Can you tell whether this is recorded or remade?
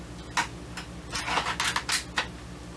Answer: recorded